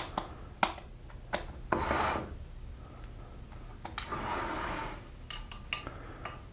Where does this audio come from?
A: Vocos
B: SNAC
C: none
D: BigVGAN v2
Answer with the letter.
C